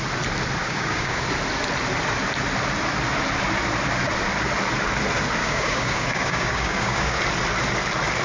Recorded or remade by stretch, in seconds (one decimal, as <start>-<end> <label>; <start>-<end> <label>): 0.0-0.6 recorded; 0.6-1.2 remade; 1.2-5.4 recorded; 5.4-7.2 remade; 7.2-8.2 recorded